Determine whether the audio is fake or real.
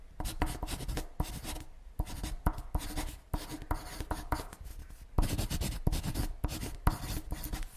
real